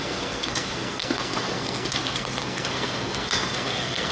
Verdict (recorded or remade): remade